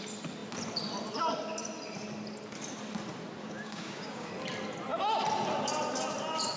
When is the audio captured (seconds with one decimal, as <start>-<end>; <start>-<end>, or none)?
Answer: 0.0-3.4; 4.3-6.6